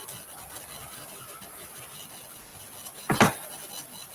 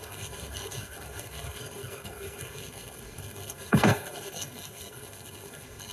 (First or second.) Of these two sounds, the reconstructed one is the second